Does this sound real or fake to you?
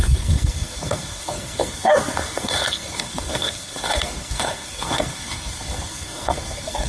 fake